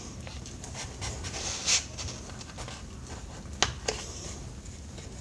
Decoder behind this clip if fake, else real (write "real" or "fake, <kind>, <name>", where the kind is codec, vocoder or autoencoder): real